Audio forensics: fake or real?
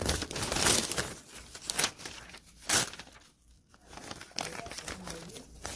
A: real